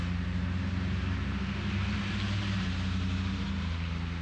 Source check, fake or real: real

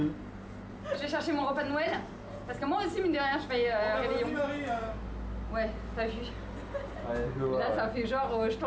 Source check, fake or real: real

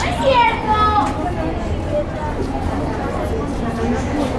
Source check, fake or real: real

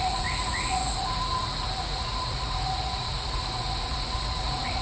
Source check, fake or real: fake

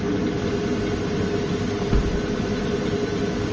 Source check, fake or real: real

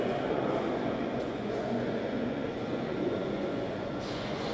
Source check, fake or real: fake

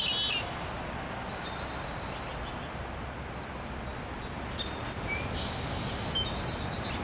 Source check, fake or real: real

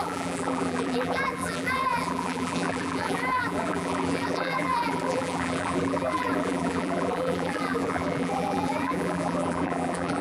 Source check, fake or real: fake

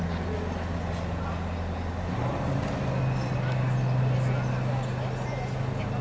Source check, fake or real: real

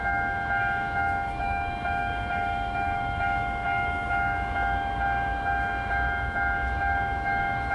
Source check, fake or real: fake